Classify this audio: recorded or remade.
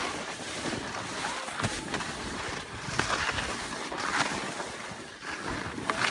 recorded